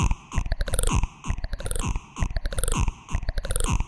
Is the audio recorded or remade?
recorded